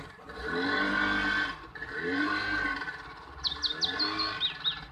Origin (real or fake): real